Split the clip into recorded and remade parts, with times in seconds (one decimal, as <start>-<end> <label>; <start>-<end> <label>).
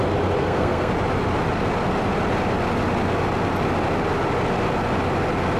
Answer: 0.0-0.4 recorded; 0.4-0.9 remade; 0.9-5.6 recorded